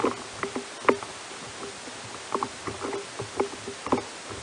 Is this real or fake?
real